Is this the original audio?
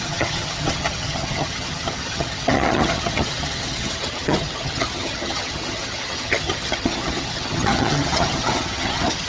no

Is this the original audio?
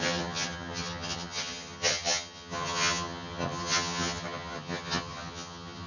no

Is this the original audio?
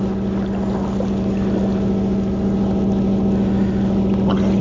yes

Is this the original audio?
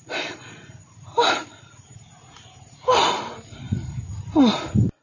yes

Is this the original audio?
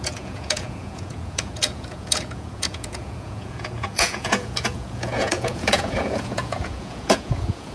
no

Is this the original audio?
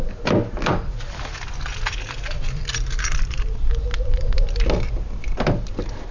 yes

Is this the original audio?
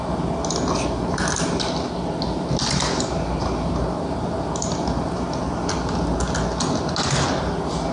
yes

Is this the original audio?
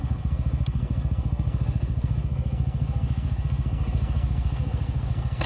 no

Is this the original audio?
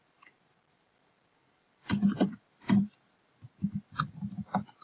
yes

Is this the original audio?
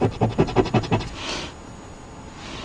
yes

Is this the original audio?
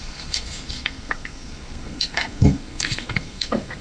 no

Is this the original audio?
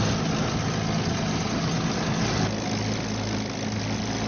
yes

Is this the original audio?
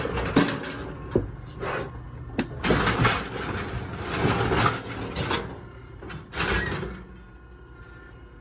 yes